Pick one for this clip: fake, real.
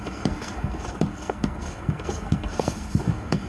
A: fake